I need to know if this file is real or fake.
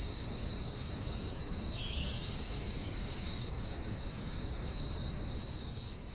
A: fake